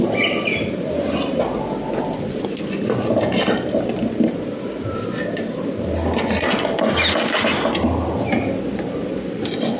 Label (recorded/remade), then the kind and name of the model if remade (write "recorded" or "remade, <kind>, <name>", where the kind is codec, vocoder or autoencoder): recorded